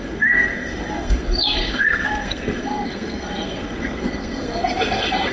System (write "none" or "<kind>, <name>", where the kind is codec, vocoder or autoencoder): codec, SNAC